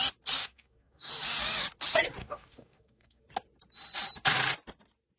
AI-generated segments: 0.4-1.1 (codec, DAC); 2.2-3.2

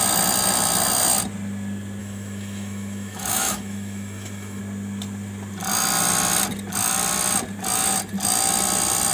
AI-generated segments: 2.0-4.6 (autoencoder, DAC-VAE)

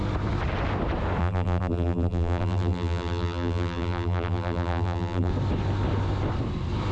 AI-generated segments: 1.2-5.3 (vocoder, BigVGAN v2)

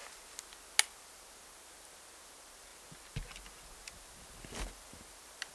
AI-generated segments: none

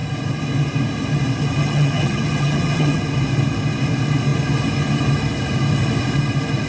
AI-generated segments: 1.6-3.0 (vocoder, HiFi-GAN)

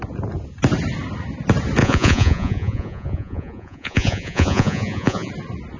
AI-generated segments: 1.8-5.3 (vocoder, Vocos)